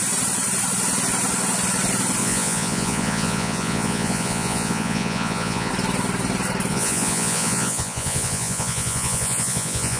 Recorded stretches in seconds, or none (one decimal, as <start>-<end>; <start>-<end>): 0.0-2.2; 5.7-6.7